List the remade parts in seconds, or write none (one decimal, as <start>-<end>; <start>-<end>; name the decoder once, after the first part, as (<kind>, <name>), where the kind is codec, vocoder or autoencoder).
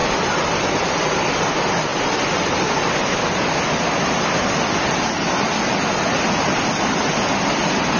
none